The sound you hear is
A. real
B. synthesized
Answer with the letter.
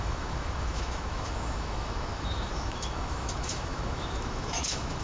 B